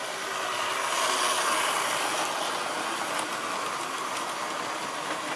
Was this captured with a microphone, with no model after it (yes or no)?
yes